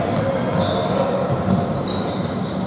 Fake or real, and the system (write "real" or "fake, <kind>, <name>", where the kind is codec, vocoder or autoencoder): real